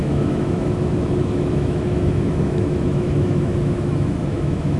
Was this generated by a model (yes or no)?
yes